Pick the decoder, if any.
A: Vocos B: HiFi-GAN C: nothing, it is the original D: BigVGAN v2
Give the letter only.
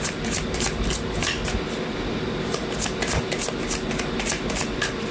C